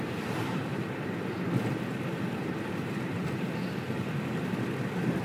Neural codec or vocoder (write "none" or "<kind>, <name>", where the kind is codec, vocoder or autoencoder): vocoder, BigVGAN v2